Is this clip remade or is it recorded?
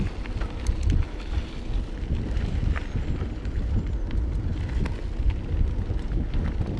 recorded